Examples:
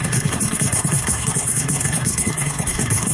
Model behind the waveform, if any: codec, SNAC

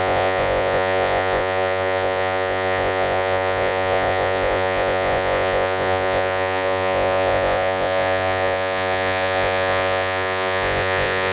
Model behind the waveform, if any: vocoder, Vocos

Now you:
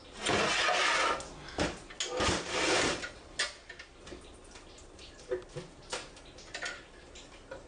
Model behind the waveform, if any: none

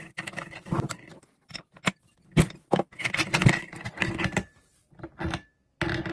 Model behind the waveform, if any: none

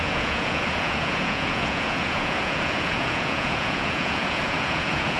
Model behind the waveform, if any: vocoder, Vocos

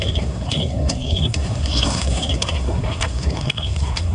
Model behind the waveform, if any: codec, SNAC